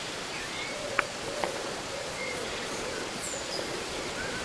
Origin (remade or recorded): remade